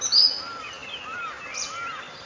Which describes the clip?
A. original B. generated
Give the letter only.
A